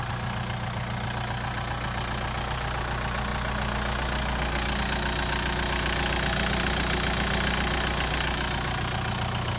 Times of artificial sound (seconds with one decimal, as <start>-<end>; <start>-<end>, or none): none